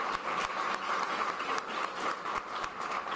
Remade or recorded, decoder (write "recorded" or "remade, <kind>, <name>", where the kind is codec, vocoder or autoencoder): recorded